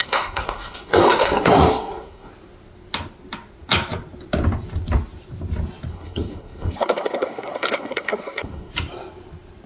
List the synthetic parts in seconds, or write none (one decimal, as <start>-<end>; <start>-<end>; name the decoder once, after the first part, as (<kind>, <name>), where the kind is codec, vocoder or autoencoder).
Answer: 0.0-2.3 (codec, SNAC); 5.9-8.7